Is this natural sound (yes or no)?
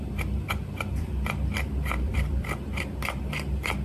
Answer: no